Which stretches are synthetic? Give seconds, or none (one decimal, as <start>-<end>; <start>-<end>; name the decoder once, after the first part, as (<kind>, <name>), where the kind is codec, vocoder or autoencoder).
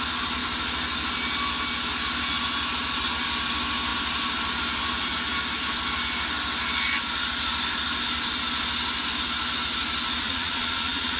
10.2-11.2 (vocoder, Vocos)